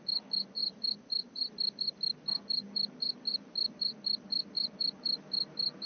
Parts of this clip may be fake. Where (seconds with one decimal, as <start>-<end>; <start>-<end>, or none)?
0.6-1.5